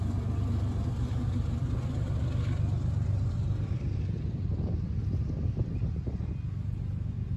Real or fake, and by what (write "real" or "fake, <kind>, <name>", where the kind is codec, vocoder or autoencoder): real